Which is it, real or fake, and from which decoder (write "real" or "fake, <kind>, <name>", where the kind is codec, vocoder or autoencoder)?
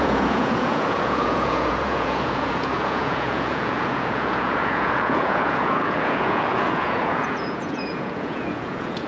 fake, vocoder, Vocos